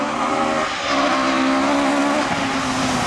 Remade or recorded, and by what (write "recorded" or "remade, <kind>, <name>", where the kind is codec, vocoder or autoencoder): recorded